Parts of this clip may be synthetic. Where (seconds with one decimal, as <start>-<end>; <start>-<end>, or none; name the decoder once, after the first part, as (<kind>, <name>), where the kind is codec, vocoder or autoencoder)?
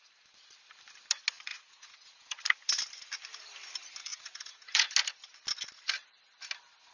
1.5-2.4 (vocoder, Vocos); 4.1-4.9